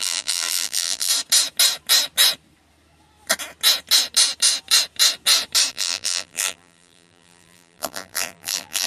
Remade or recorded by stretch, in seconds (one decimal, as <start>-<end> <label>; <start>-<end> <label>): 0.0-1.1 remade; 1.1-5.7 recorded; 5.7-8.9 remade